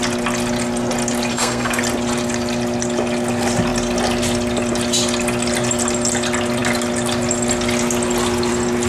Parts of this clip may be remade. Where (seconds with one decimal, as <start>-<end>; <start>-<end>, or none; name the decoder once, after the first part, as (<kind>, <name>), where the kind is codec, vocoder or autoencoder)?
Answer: 1.3-1.8 (codec, SNAC)